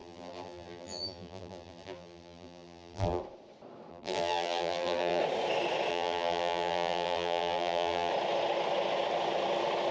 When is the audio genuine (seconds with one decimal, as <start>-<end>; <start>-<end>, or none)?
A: 3.2-3.9; 5.2-5.9; 8.1-9.9